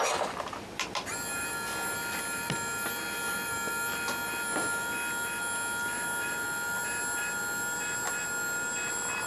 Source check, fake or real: real